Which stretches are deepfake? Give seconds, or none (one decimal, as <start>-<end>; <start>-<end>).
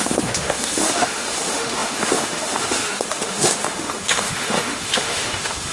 0.0-5.7